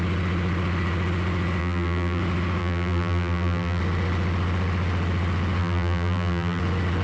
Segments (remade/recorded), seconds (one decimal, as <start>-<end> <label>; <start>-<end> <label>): 0.0-1.6 recorded; 1.6-2.2 remade; 2.2-2.6 recorded; 2.6-3.8 remade; 3.8-5.6 recorded; 5.6-6.6 remade; 6.6-7.0 recorded